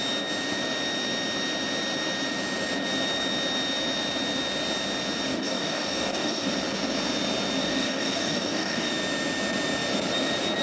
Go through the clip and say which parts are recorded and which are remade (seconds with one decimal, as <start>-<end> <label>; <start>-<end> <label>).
0.0-5.3 recorded; 5.3-6.5 remade; 6.5-7.6 recorded; 7.6-8.9 remade; 8.9-10.6 recorded